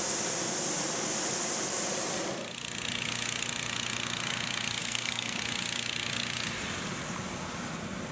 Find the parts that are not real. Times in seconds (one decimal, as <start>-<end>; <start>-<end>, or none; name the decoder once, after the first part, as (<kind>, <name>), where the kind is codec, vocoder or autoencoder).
4.8-5.4 (codec, SNAC)